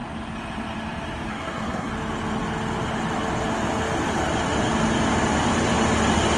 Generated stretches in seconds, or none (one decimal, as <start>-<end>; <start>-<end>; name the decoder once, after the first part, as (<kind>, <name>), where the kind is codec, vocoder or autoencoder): 1.3-1.9 (codec, SNAC)